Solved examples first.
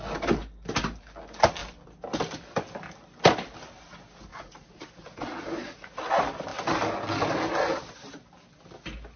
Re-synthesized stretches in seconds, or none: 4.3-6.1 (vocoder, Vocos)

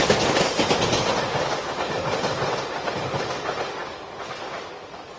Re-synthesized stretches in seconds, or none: none